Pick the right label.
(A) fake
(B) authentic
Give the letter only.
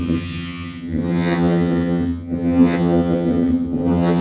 A